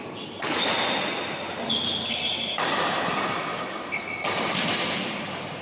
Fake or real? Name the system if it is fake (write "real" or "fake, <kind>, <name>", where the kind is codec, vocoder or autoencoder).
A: real